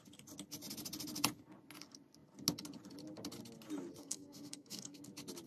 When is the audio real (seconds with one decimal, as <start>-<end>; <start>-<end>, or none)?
0.0-4.0; 5.0-5.5